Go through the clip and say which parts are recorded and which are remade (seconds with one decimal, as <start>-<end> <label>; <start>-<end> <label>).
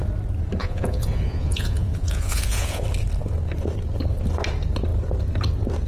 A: 0.0-0.6 recorded; 0.6-2.8 remade; 2.8-5.9 recorded